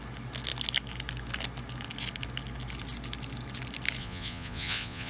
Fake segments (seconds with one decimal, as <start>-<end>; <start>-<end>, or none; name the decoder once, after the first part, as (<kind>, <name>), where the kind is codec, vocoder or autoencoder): 4.0-5.1 (vocoder, Vocos)